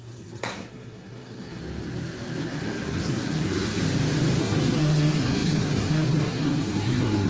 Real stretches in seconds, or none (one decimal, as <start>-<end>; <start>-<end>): 1.6-2.4; 3.8-4.4